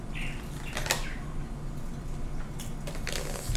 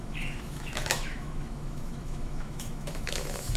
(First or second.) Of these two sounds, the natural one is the first